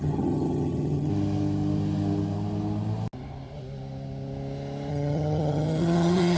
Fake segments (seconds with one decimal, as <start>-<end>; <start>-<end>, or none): 0.0-1.1; 4.9-6.4